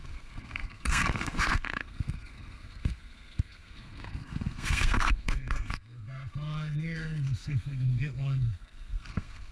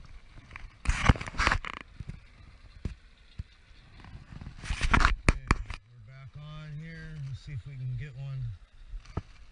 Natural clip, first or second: second